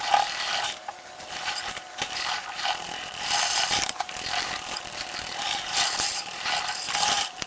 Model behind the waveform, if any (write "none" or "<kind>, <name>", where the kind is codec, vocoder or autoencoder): vocoder, BigVGAN v2